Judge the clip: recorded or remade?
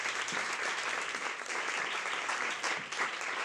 recorded